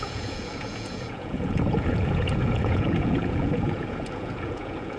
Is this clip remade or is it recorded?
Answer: remade